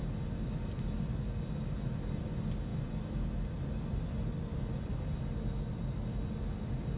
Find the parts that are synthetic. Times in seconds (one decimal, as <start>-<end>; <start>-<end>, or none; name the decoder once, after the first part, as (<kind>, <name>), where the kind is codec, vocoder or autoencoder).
none